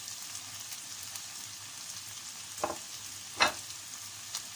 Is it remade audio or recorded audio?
recorded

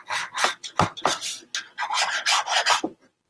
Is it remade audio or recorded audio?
recorded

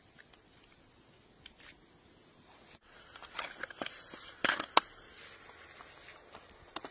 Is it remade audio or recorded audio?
recorded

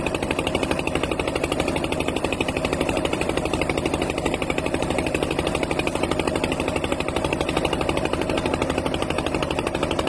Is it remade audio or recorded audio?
remade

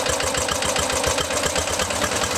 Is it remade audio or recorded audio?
recorded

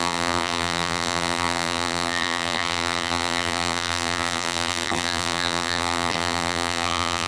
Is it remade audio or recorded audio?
remade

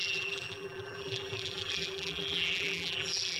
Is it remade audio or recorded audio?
remade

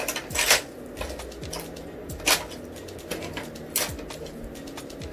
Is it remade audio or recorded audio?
recorded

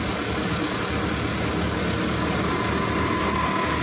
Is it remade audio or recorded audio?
recorded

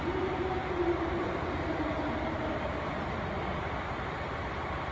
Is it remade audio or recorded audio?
remade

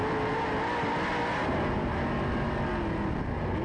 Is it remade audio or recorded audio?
recorded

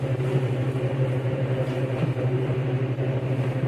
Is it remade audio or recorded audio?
remade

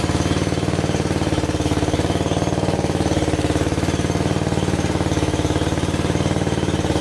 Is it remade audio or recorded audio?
remade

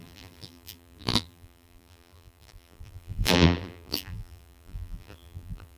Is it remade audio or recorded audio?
remade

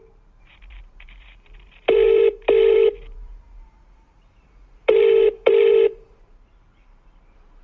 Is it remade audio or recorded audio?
remade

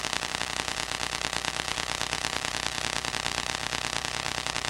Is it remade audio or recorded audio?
remade